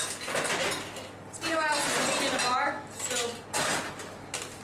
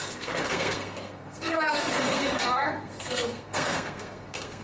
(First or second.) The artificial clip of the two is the second